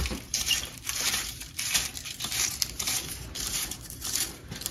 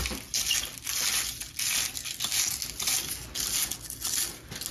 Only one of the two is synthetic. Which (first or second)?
first